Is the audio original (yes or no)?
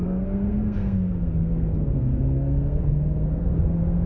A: no